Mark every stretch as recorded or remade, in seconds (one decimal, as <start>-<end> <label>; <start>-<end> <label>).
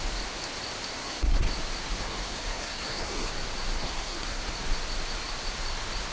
0.0-1.0 recorded; 1.0-1.5 remade; 1.5-2.0 recorded; 2.0-3.3 remade; 3.3-3.7 recorded; 3.7-4.5 remade; 4.5-6.1 recorded